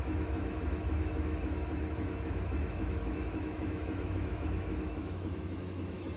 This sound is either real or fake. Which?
fake